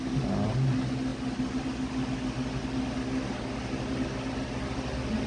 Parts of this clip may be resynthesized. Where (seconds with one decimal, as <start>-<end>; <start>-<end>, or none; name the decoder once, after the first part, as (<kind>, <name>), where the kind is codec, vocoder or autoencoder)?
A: none